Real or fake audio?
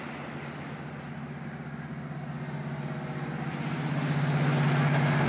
real